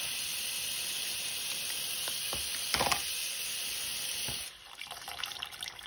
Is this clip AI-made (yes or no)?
no